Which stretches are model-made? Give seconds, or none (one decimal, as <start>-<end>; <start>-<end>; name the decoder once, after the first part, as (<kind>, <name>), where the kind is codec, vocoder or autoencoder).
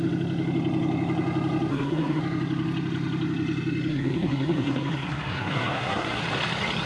1.7-2.2 (codec, SNAC); 3.9-6.2